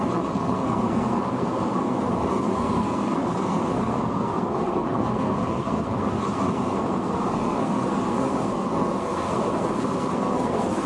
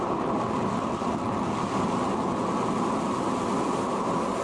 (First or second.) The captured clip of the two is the second